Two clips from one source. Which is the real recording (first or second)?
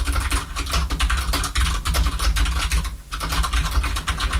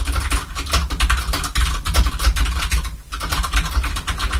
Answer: first